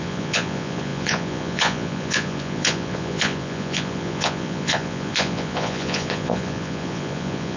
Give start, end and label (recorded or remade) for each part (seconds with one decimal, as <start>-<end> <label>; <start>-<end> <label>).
0.0-7.6 remade